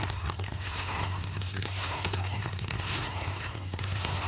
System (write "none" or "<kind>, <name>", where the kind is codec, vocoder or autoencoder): codec, SNAC